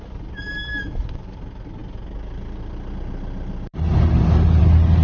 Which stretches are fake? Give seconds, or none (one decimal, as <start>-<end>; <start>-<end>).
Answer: none